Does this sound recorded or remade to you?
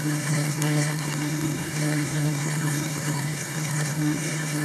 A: remade